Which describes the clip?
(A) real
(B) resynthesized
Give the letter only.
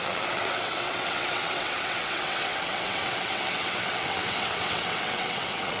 B